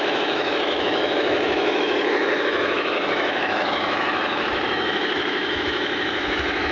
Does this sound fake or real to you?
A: fake